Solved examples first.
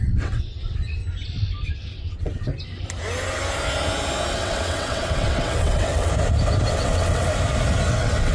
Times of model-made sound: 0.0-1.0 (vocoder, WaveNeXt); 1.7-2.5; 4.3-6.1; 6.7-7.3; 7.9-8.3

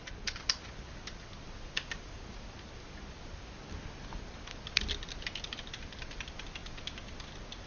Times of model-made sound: none

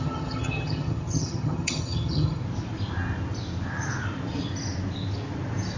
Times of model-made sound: 0.0-2.4 (vocoder, HiFi-GAN)

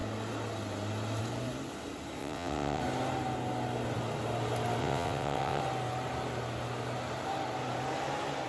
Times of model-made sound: 2.2-2.8 (vocoder, WaveNeXt); 4.8-5.6

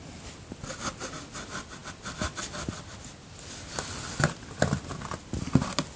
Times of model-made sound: none